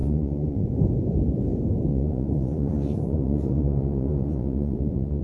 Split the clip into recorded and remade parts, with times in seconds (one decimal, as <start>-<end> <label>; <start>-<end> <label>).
0.0-0.7 remade; 0.7-1.9 recorded; 1.9-5.2 remade